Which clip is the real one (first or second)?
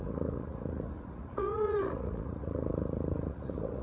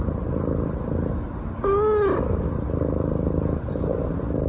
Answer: second